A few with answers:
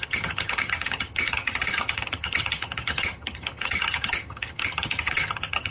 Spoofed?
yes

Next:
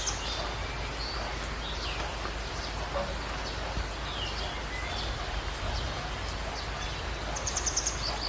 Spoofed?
no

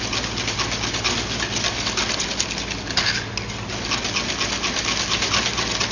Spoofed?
no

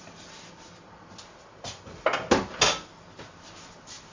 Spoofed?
no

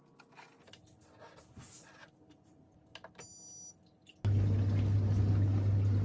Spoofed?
no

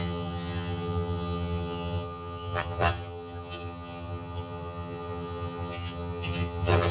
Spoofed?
yes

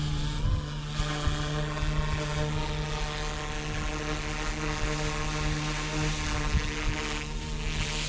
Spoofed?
no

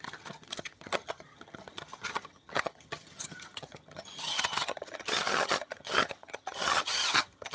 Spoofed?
yes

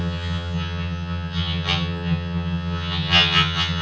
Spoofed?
yes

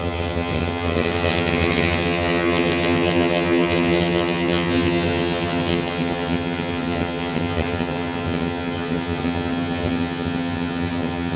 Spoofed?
yes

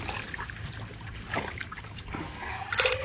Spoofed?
no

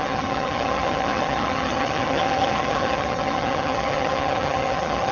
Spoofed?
yes